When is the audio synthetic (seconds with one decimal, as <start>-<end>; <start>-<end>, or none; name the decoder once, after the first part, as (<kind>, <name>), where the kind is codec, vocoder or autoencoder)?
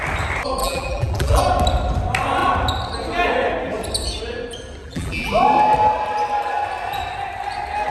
0.6-1.4 (vocoder, BigVGAN v2); 4.8-5.3